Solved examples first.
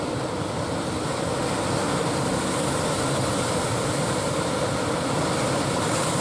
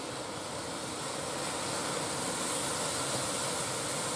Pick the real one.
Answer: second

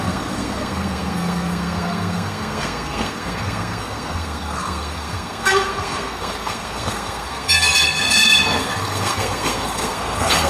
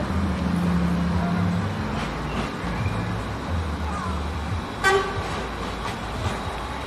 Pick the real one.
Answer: second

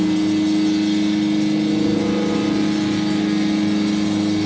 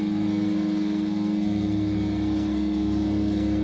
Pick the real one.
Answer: first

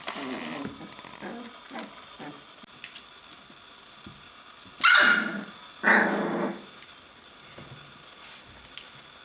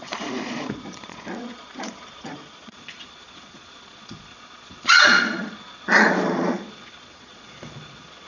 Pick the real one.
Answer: first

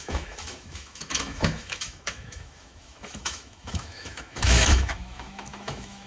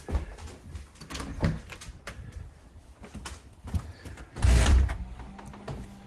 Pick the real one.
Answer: second